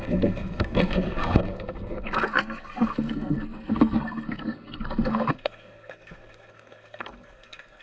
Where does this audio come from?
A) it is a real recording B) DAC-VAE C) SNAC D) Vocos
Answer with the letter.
C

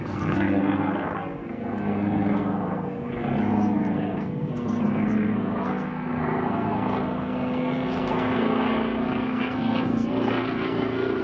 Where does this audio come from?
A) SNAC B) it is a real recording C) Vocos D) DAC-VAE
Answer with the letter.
A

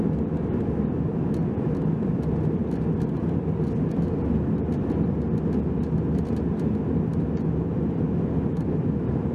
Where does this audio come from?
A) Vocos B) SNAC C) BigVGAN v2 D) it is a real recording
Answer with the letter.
D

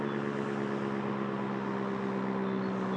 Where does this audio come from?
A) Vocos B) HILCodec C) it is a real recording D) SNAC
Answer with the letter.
C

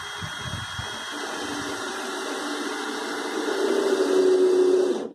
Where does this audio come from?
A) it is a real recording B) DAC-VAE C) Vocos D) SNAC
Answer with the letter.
A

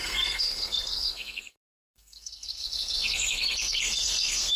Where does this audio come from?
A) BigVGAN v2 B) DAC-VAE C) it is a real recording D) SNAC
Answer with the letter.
D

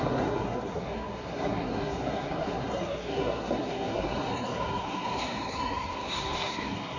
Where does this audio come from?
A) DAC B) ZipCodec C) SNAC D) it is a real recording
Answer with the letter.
C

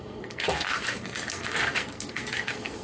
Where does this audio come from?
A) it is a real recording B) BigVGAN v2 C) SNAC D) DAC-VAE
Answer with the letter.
C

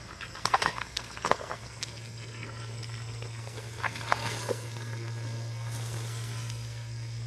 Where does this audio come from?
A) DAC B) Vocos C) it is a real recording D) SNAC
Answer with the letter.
D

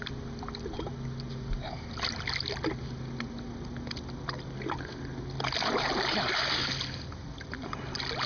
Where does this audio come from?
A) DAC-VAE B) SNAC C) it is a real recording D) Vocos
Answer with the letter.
C